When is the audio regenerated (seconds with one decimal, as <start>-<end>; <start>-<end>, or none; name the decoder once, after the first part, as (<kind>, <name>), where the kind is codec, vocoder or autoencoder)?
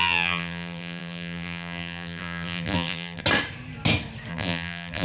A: 0.0-3.2 (vocoder, BigVGAN v2); 4.3-5.0